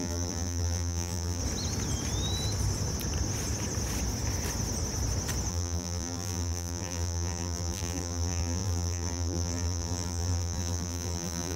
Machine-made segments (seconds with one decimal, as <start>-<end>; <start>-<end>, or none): 0.0-1.4; 5.5-11.6